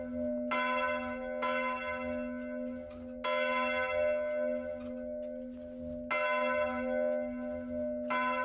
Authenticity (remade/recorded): recorded